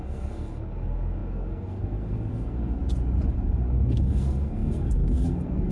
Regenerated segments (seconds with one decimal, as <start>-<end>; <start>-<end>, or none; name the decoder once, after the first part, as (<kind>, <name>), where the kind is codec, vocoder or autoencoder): 0.0-2.8 (codec, SNAC); 3.3-5.7